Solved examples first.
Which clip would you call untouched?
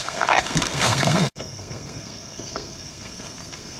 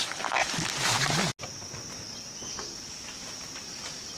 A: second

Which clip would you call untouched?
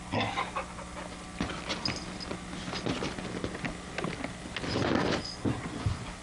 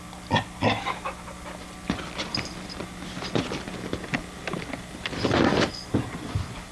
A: first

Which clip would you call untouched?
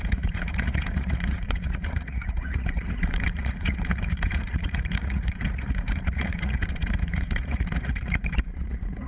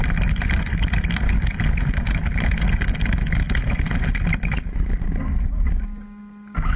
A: second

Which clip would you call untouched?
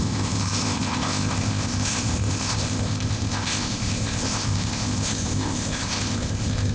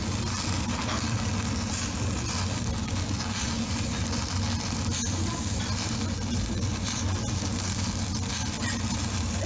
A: second